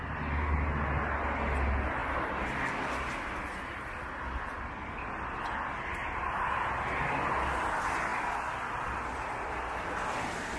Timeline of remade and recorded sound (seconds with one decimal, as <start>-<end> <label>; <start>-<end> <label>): 0.0-10.6 recorded